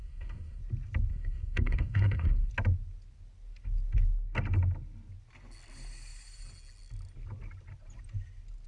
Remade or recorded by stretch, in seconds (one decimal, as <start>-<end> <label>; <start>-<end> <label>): 0.0-0.6 remade; 0.6-1.1 recorded; 1.1-2.5 remade; 2.5-8.7 recorded